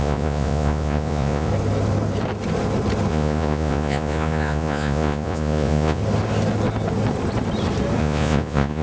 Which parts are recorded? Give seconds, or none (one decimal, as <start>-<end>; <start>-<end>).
1.5-3.1; 6.0-8.0